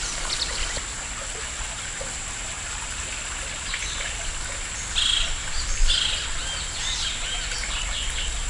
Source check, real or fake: real